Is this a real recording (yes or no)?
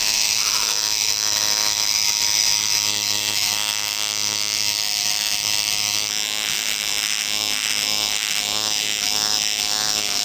no